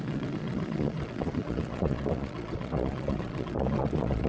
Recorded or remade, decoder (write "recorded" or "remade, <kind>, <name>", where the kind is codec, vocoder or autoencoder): remade, vocoder, Vocos